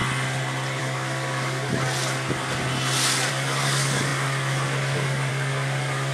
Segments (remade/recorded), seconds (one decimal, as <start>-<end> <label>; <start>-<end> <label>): 0.0-0.8 recorded; 0.8-1.7 remade; 1.7-3.3 recorded; 3.3-6.1 remade